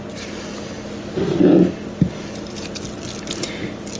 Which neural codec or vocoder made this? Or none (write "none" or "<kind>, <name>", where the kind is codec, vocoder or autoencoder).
none